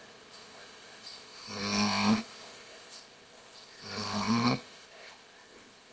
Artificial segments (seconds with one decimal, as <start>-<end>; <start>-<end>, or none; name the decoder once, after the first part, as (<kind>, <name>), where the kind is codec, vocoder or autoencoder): 0.0-5.9 (codec, ZipCodec)